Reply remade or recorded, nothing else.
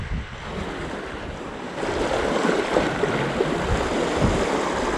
recorded